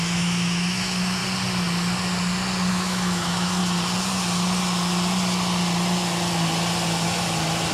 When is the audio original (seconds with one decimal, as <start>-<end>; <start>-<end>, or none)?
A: 1.2-2.7; 3.6-7.7